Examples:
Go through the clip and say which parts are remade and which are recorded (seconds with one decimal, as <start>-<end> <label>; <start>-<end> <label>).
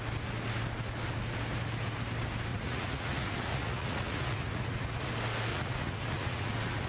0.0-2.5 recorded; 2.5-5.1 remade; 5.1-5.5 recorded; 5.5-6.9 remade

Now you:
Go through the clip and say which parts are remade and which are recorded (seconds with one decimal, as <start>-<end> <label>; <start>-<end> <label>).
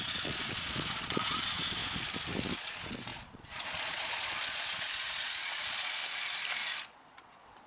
0.0-1.8 remade; 1.8-2.6 recorded; 2.6-6.0 remade; 6.0-6.9 recorded; 6.9-7.7 remade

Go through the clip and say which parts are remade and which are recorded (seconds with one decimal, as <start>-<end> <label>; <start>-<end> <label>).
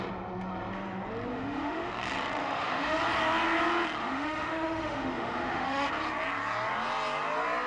0.0-1.3 recorded; 1.3-1.9 remade; 1.9-2.4 recorded; 2.4-3.0 remade; 3.0-4.0 recorded; 4.0-5.9 remade; 5.9-7.7 recorded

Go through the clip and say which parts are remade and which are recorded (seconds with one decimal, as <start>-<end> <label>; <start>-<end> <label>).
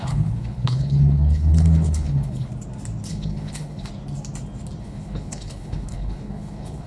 0.0-2.5 remade; 2.5-3.1 recorded; 3.1-3.9 remade; 3.9-4.8 recorded; 4.8-6.9 remade